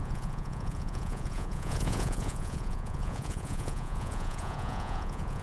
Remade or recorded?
remade